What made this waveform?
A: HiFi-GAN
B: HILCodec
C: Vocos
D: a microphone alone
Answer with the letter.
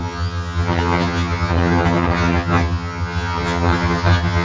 A